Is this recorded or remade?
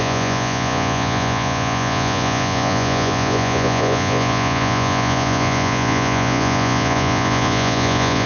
remade